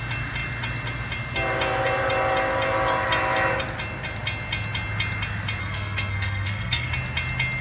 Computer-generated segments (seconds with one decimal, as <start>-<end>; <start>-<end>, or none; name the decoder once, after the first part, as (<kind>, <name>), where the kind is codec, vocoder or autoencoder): 5.6-6.9 (codec, SNAC)